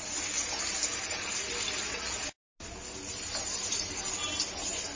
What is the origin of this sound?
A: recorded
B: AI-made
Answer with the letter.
A